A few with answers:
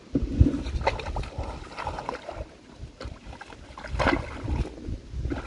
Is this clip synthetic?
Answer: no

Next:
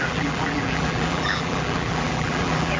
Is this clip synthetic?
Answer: yes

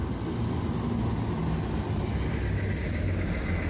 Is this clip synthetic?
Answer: no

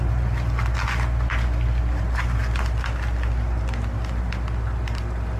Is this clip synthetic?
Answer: no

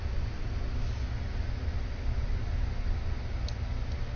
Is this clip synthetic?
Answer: no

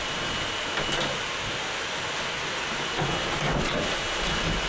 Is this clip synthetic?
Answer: no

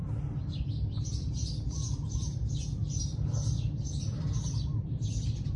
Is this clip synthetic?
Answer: yes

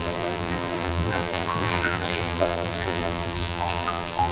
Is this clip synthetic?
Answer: yes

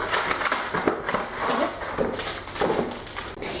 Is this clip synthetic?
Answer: yes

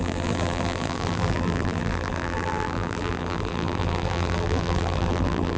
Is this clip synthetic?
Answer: yes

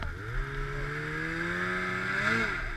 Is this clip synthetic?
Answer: no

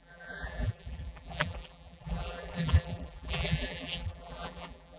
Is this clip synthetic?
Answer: yes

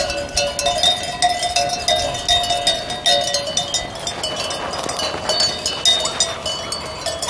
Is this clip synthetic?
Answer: no